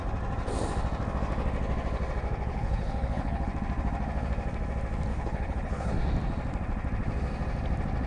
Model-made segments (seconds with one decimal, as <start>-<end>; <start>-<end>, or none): 2.5-3.5; 5.1-6.0